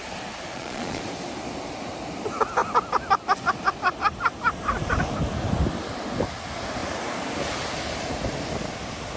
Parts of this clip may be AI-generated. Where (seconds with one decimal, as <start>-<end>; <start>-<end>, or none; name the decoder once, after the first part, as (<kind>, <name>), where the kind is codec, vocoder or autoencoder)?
0.5-1.0 (vocoder, Vocos)